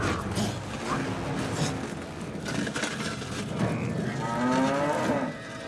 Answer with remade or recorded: recorded